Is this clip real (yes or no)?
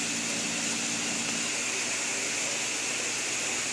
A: yes